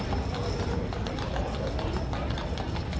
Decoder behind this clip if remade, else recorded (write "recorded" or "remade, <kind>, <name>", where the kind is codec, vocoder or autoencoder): recorded